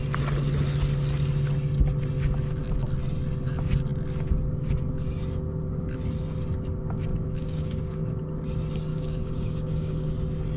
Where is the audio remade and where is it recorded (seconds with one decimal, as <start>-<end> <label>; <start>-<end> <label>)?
0.0-7.1 recorded; 7.1-8.0 remade; 8.0-8.9 recorded; 8.9-10.1 remade; 10.1-10.6 recorded